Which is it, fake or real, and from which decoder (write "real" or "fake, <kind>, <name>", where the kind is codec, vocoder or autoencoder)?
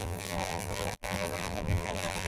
fake, vocoder, BigVGAN v2